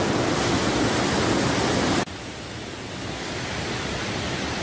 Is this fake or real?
real